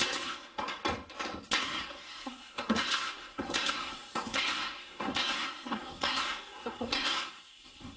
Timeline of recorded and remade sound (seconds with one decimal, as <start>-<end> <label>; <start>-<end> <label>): 0.0-0.8 remade; 0.8-1.6 recorded; 1.6-8.0 remade